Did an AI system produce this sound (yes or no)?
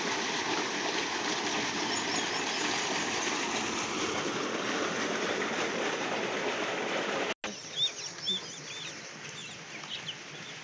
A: no